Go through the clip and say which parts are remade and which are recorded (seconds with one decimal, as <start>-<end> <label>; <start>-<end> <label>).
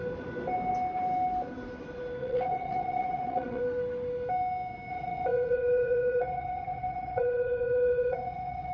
0.0-2.2 recorded; 2.2-3.6 remade; 3.6-4.9 recorded; 4.9-8.7 remade